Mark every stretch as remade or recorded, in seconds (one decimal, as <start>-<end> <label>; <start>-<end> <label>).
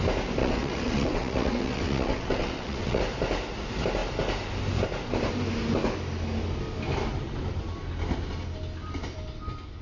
0.0-0.4 recorded; 0.4-3.0 remade; 3.0-9.8 recorded